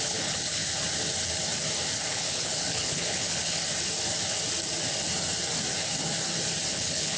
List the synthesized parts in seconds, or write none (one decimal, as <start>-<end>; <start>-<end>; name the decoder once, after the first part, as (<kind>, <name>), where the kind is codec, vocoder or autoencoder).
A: 0.0-0.6 (codec, HILCodec); 2.1-3.6; 6.7-7.2